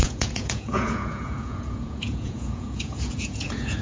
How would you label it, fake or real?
fake